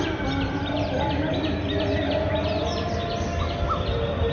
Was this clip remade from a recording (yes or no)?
no